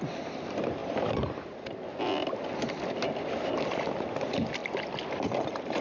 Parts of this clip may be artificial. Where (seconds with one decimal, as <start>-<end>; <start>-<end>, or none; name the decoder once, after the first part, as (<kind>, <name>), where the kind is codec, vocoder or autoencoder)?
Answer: none